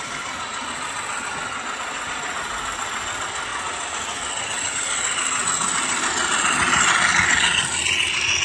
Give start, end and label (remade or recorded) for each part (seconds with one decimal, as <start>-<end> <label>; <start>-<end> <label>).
0.0-8.4 recorded

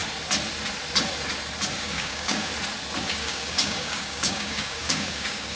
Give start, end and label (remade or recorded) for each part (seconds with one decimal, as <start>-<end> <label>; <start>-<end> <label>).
0.0-1.8 recorded; 1.8-2.5 remade; 2.5-3.1 recorded; 3.1-5.6 remade

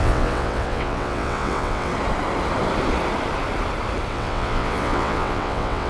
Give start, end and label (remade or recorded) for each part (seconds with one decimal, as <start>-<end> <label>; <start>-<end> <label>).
0.0-1.9 remade; 1.9-4.1 recorded; 4.1-5.9 remade

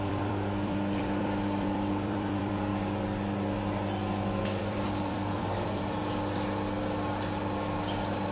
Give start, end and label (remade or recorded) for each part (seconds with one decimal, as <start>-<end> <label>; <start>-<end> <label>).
0.0-2.7 remade; 2.7-4.6 recorded; 4.6-6.0 remade; 6.0-8.3 recorded

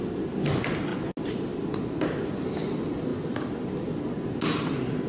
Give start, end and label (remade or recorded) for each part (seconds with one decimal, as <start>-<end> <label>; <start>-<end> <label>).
0.0-5.1 recorded

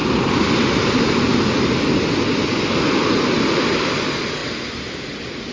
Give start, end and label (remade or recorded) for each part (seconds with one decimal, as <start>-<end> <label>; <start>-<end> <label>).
0.0-5.5 recorded